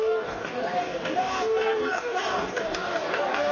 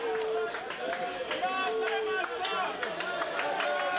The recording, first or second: second